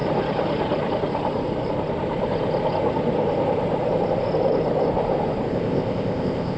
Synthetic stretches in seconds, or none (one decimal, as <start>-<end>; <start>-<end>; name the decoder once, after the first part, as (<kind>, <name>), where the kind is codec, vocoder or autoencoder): 5.5-6.6 (codec, ZipCodec)